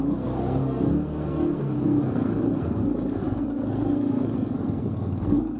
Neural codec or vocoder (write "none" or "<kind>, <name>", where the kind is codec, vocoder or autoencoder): codec, SNAC